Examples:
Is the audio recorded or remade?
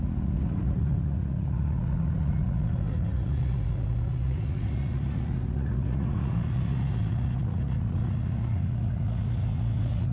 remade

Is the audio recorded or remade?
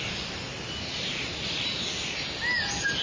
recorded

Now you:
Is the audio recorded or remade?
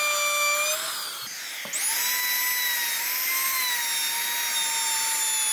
recorded